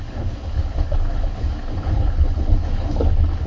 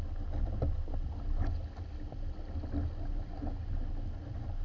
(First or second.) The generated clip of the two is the first